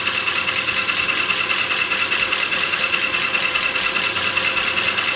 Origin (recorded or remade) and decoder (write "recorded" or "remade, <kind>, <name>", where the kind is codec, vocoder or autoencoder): recorded